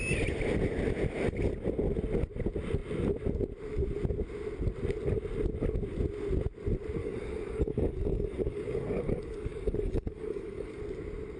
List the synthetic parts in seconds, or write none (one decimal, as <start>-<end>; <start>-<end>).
7.0-10.8